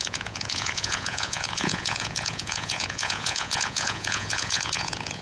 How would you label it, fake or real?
fake